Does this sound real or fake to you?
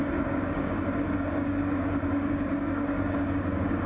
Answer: fake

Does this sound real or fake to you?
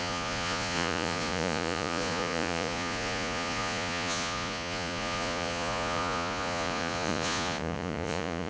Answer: fake